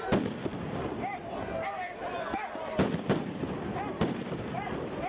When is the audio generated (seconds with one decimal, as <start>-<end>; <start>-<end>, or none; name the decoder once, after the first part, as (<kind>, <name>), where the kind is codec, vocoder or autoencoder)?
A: none